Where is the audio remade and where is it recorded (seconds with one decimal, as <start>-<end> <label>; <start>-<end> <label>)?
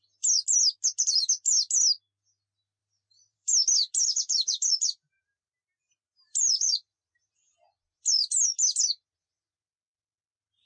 0.0-2.8 recorded; 2.8-3.5 remade; 3.5-4.0 recorded; 4.0-7.3 remade; 7.3-10.7 recorded